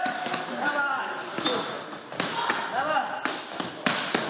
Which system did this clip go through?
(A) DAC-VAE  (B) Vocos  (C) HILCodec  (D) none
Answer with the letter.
D